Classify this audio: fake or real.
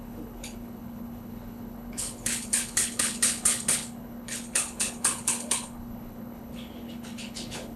fake